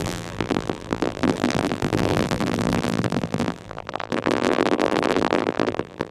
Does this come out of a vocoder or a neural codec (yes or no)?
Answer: yes